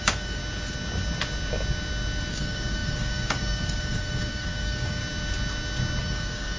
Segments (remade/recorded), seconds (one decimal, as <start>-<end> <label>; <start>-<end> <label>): 0.0-0.4 remade; 0.4-2.3 recorded; 2.3-5.0 remade; 5.0-6.0 recorded; 6.0-6.6 remade